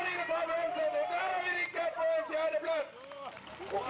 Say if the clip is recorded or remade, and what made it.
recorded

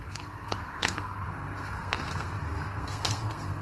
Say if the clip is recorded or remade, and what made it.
remade, codec, SNAC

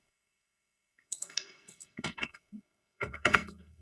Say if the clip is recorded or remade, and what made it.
remade, codec, SNAC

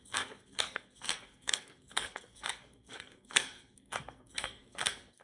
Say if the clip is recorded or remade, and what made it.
remade, codec, SNAC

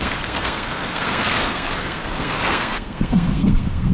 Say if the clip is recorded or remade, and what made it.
remade, codec, SNAC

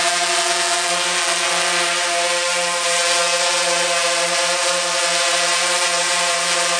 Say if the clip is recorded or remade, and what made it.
recorded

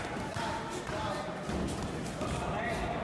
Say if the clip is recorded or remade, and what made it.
recorded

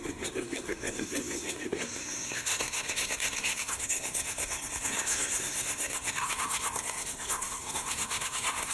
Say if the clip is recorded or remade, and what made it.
remade, codec, SNAC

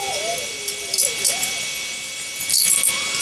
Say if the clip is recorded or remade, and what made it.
recorded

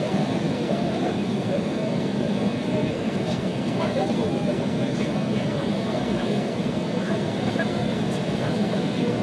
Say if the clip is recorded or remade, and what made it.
remade, codec, SNAC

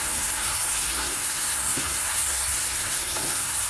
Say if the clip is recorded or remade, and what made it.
remade, codec, SNAC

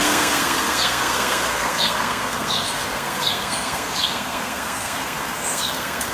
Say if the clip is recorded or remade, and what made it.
remade, codec, SNAC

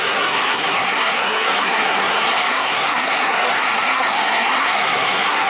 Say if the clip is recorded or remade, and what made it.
remade, codec, SNAC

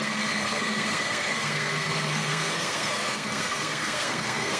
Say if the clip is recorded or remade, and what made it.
remade, codec, SNAC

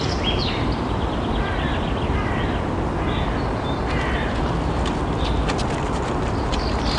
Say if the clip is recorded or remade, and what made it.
recorded